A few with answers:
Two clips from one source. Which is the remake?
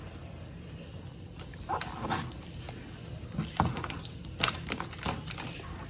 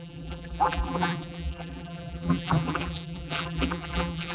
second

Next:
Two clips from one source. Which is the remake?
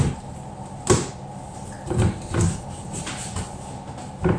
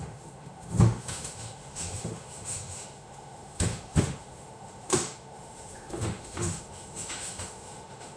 second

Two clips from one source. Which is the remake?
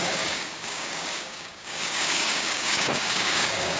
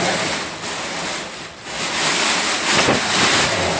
first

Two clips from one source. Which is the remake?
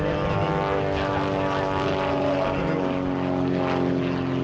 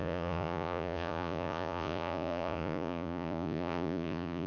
second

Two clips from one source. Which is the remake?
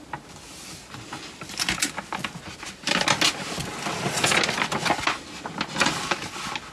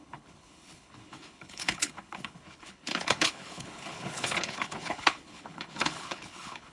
second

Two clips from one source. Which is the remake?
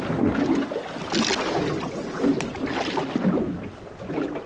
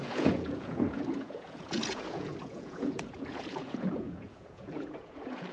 second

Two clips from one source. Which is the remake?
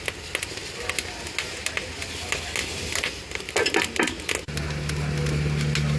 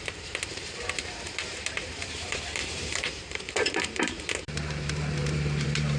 second